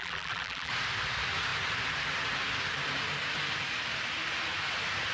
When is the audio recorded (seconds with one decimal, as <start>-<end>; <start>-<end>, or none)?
0.7-5.1